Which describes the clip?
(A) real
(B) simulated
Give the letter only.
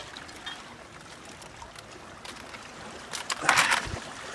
A